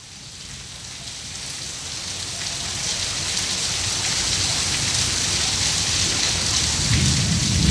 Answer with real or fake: real